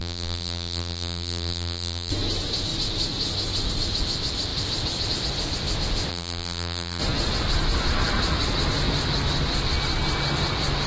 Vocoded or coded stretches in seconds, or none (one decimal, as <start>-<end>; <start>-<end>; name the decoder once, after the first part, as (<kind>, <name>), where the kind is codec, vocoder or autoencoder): 0.0-2.1 (vocoder, BigVGAN v2); 6.1-7.0